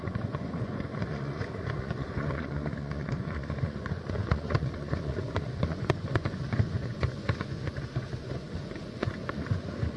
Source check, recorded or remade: remade